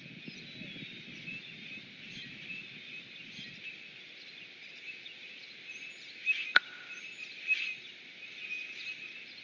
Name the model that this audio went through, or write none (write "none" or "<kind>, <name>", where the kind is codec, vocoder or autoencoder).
none